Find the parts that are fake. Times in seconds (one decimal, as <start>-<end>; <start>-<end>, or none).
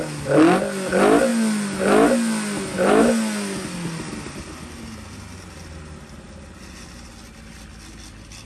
none